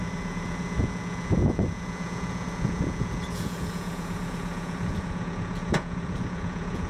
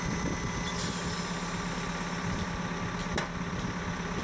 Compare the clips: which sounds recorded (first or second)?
second